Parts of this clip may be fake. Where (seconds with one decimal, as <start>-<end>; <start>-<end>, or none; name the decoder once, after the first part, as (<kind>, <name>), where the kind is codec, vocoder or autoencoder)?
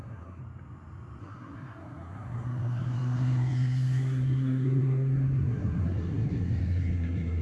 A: 0.0-0.4 (codec, SNAC); 1.2-7.4